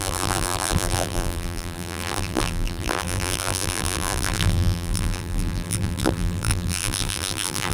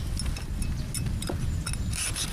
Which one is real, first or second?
second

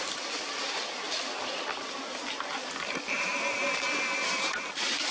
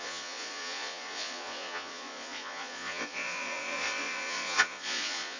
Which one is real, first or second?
first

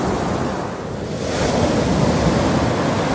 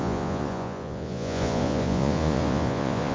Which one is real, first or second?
first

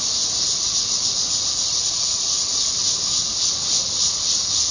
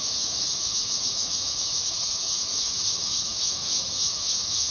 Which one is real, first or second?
first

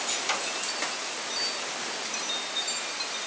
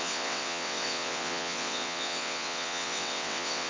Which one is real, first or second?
first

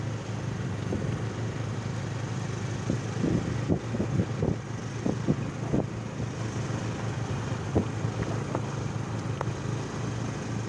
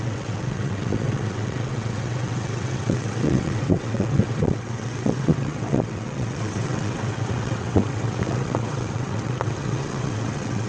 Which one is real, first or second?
first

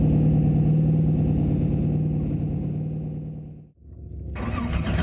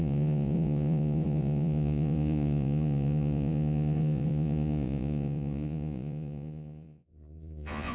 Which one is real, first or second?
first